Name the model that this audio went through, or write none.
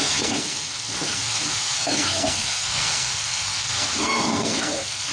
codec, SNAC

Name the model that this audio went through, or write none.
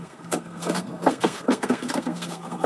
codec, SNAC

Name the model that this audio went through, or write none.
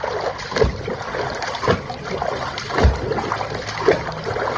none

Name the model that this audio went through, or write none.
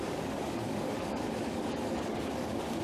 codec, DAC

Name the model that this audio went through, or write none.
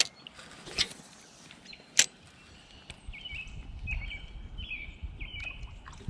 none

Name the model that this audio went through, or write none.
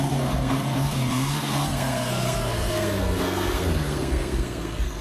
codec, SNAC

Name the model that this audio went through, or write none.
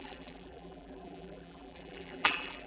vocoder, BigVGAN v2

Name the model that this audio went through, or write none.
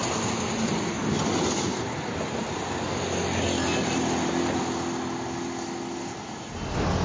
none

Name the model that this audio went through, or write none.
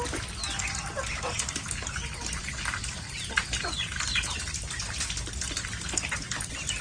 none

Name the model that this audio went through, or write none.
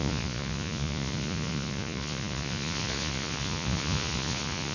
vocoder, Vocos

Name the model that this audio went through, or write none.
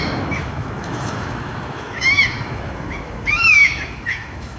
autoencoder, DAC-VAE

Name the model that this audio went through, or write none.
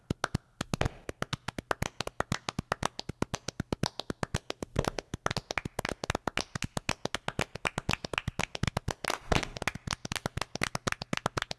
none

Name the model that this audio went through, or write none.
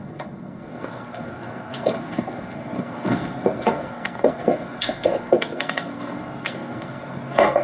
codec, SNAC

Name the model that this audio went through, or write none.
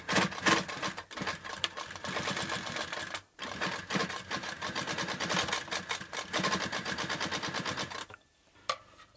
none